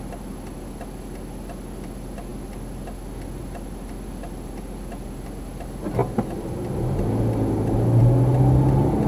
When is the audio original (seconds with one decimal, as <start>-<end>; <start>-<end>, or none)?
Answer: 0.0-9.1